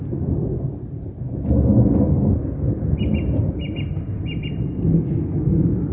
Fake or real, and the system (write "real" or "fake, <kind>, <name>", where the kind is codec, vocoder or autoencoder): real